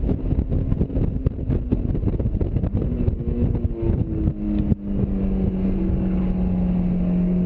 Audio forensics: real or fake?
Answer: real